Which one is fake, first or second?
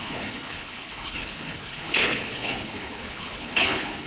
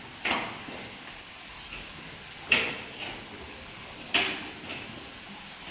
first